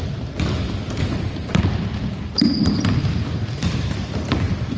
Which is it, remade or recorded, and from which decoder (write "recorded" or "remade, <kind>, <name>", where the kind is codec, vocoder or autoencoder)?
recorded